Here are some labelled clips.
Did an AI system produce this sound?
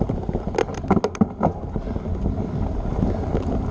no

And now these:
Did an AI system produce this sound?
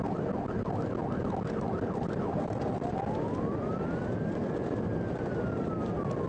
no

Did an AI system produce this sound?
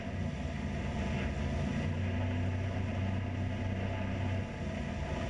no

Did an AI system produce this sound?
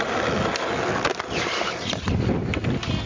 no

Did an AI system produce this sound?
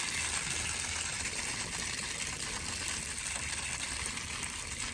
no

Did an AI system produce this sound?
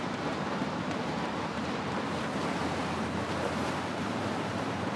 yes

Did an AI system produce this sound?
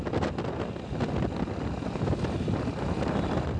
no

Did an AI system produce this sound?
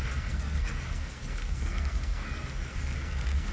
yes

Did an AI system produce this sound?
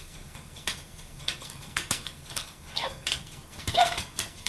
yes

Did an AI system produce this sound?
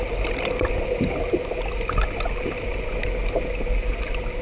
no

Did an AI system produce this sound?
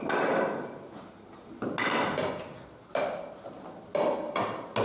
no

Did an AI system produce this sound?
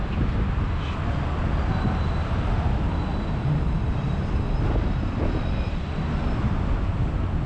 no